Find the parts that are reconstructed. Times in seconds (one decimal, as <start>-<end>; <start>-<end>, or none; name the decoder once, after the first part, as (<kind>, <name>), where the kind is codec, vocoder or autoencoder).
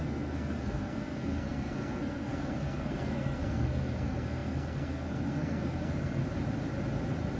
0.0-6.2 (codec, SNAC)